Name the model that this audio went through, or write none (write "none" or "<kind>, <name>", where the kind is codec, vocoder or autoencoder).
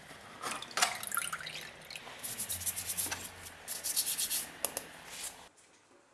none